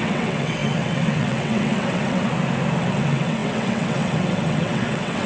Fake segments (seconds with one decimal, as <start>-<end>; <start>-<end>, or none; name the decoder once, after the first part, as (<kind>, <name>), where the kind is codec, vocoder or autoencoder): 0.0-2.3 (vocoder, WaveNeXt); 2.8-5.3